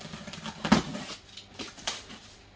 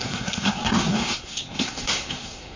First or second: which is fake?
second